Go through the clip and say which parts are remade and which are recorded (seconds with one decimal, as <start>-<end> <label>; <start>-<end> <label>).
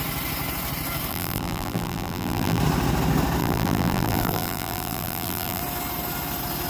0.0-1.1 recorded; 1.1-2.6 remade; 2.6-3.4 recorded; 3.4-5.6 remade; 5.6-6.7 recorded